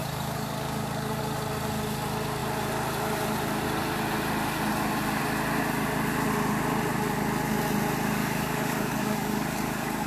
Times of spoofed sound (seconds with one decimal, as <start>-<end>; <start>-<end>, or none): 0.0-1.2; 8.2-10.1